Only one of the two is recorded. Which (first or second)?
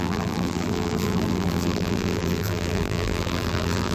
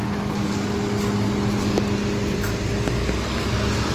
second